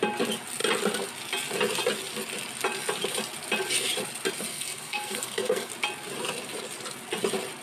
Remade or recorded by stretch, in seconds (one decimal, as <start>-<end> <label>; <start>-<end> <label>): 0.0-4.5 recorded; 4.5-5.7 remade; 5.7-7.6 recorded